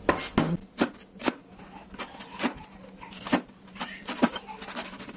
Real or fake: real